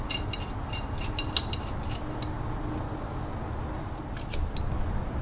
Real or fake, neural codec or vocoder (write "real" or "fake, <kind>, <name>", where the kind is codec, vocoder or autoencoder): real